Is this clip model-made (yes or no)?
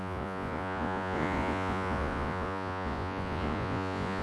yes